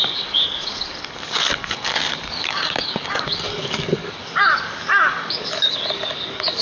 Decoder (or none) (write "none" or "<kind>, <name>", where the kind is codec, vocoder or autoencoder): codec, DAC